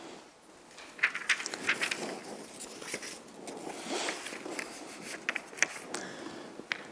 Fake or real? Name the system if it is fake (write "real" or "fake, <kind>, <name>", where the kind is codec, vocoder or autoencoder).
real